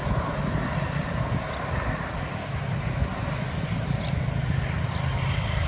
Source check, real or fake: real